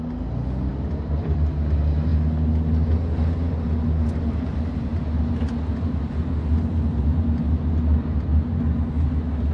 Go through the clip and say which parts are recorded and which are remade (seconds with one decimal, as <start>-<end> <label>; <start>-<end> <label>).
0.0-0.7 recorded; 0.7-1.5 remade; 1.5-9.5 recorded